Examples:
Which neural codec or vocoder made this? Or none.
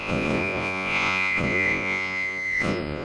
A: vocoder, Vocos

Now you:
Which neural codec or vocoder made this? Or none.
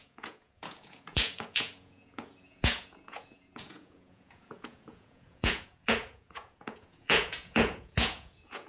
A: vocoder, Vocos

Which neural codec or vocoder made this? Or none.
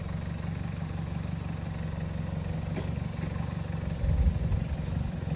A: none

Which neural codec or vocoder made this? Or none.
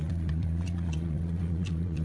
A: vocoder, Vocos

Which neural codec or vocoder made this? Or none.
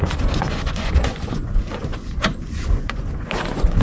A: vocoder, Vocos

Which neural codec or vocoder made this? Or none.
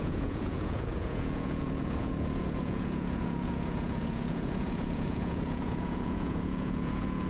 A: vocoder, Vocos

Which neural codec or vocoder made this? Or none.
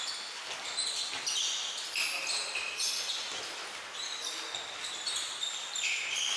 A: none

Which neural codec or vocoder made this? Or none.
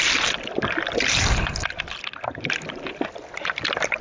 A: none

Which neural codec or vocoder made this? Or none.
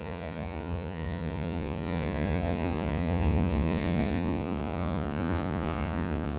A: vocoder, Vocos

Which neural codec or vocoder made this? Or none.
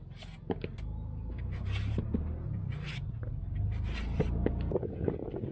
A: none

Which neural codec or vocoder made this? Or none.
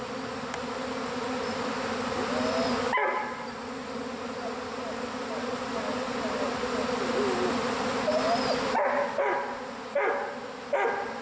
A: none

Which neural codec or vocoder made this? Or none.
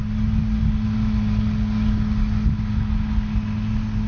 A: none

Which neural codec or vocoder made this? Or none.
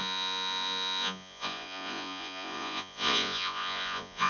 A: vocoder, Vocos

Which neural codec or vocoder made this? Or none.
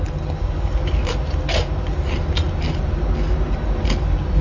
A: none